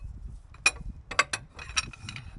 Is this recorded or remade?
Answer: recorded